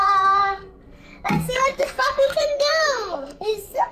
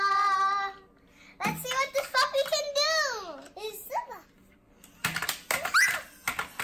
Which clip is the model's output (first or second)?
first